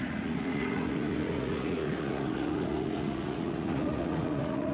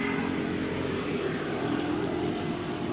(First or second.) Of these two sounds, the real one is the second